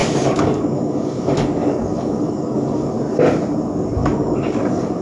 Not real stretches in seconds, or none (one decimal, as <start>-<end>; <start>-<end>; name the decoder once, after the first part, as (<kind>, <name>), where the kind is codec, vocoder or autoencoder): 0.0-2.9 (codec, DAC); 4.0-5.0